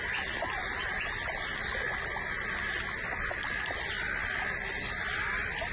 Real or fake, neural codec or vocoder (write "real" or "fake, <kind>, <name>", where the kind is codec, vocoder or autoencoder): real